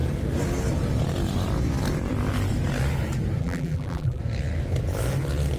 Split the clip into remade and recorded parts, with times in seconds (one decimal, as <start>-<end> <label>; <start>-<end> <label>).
0.0-3.4 recorded; 3.4-4.2 remade; 4.2-5.6 recorded